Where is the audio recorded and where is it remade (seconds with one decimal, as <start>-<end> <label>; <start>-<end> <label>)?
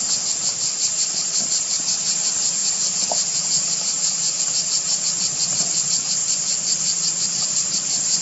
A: 0.0-2.6 recorded; 2.6-4.4 remade; 4.4-8.2 recorded